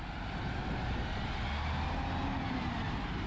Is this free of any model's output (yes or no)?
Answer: yes